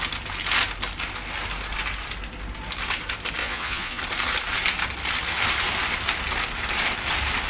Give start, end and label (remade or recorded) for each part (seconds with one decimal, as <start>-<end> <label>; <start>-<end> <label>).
0.0-3.4 recorded; 3.4-4.0 remade; 4.0-7.5 recorded